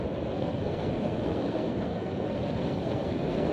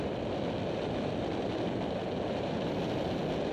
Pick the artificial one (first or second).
first